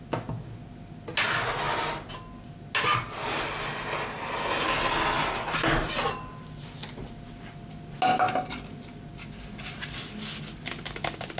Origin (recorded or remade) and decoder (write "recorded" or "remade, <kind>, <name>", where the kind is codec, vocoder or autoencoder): recorded